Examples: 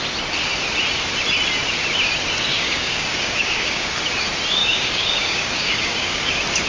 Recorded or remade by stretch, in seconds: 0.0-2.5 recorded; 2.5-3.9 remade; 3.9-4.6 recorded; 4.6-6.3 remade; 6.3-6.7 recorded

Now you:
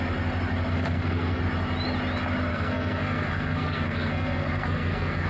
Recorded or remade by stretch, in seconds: 0.0-0.7 recorded; 0.7-1.4 remade; 1.4-2.5 recorded; 2.5-5.3 remade